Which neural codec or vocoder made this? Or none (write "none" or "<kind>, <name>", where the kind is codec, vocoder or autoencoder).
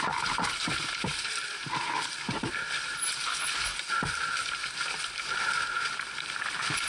vocoder, BigVGAN v2